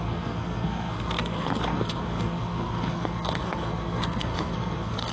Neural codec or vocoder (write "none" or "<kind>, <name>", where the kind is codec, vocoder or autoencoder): codec, SNAC